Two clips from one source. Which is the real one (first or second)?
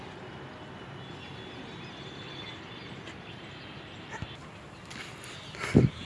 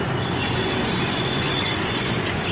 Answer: first